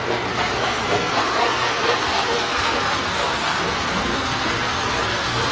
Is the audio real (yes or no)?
no